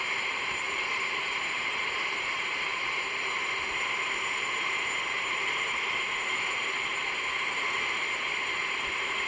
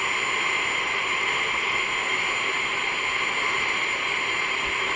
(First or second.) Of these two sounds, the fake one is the first